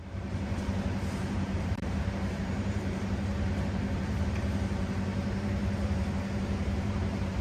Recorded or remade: remade